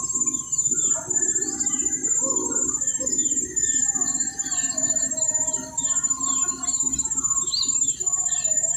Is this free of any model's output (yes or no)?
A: yes